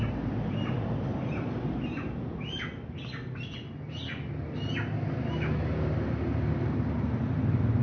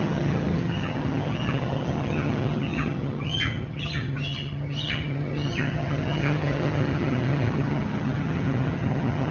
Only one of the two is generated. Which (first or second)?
second